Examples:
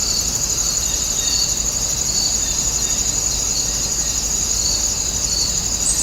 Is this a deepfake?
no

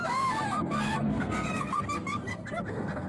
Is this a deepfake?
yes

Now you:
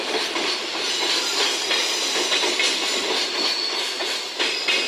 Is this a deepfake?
no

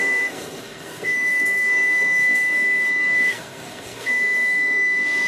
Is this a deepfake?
yes